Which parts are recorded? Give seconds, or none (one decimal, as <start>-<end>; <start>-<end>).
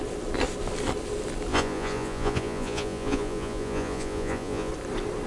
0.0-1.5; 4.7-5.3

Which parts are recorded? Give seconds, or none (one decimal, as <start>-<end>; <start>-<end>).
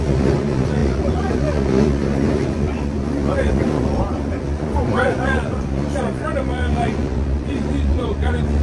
none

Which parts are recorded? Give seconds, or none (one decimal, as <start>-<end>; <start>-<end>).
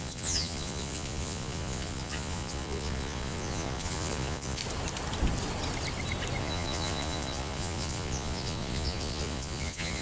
4.6-6.4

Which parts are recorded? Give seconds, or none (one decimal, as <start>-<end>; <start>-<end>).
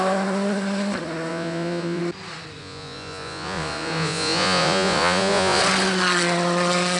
0.0-1.3; 2.0-2.6; 5.6-7.0